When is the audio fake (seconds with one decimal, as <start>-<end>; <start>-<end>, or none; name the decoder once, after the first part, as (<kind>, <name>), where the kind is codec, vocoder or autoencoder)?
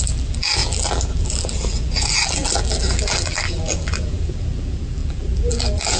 0.0-6.0 (vocoder, BigVGAN v2)